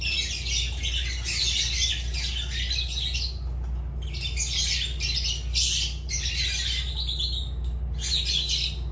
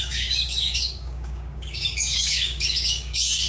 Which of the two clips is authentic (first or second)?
first